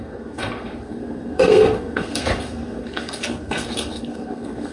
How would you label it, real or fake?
fake